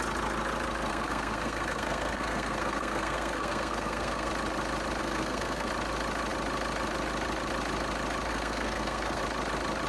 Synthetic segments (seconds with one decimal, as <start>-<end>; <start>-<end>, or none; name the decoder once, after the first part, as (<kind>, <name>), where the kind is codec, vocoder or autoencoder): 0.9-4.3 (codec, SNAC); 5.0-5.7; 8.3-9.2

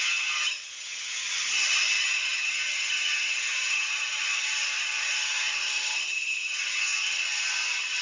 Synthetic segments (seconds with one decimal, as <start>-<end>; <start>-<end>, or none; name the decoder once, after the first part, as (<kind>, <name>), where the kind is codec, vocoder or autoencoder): 0.0-8.0 (vocoder, HiFi-GAN)

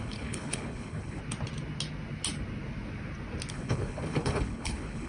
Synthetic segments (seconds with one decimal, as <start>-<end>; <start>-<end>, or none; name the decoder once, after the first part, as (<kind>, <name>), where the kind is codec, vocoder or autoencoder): 0.0-1.2 (codec, HILCodec); 3.5-5.1

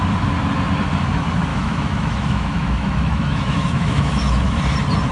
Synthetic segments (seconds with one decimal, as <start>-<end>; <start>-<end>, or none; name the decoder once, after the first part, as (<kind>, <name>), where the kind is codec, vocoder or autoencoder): 1.5-4.6 (autoencoder, DAC-VAE)